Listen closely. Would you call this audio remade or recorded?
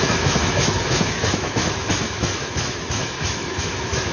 remade